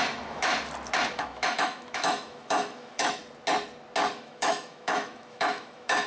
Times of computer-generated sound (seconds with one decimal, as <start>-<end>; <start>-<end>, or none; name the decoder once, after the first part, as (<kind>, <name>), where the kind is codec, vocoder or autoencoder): 0.0-0.5 (autoencoder, DAC-VAE); 1.1-3.2; 4.1-6.1